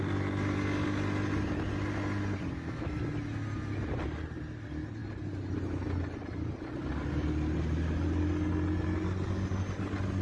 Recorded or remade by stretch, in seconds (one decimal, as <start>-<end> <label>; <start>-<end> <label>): 0.0-10.2 recorded

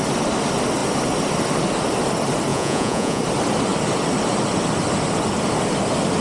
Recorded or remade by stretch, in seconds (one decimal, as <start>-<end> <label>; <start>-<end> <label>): 0.0-2.5 recorded; 2.5-3.2 remade; 3.2-6.2 recorded

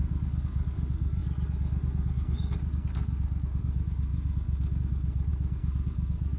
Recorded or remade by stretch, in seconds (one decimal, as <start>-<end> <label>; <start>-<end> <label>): 0.0-6.4 remade